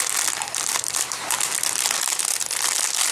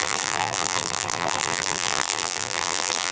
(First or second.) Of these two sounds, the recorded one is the first